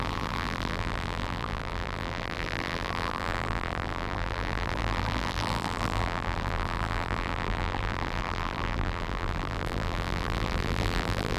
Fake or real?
fake